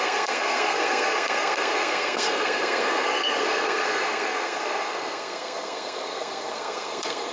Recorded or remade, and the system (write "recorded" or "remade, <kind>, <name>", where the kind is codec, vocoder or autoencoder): remade, codec, SNAC